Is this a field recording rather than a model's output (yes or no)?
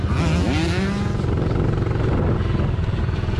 yes